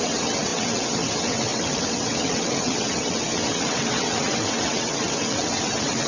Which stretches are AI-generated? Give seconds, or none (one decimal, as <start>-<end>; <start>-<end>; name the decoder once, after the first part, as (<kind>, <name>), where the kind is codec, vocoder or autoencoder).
0.0-6.1 (vocoder, WaveNeXt)